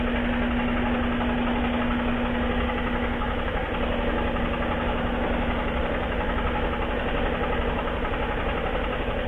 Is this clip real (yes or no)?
yes